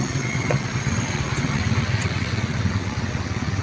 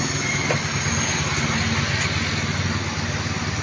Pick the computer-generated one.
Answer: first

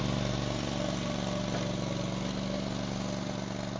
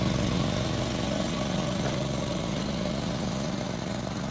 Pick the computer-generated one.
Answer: second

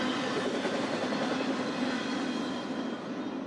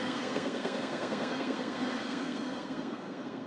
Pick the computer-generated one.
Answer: second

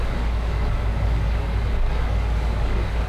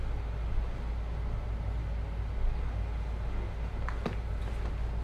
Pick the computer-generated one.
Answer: first